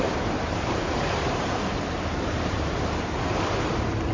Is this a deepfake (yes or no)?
yes